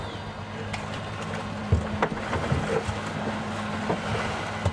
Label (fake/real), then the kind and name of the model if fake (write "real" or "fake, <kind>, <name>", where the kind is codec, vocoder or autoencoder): real